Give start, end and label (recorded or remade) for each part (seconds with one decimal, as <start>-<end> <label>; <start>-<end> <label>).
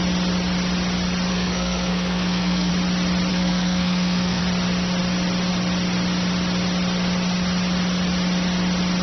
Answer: 0.0-1.3 recorded; 1.3-2.7 remade; 2.7-3.3 recorded; 3.3-4.4 remade; 4.4-9.0 recorded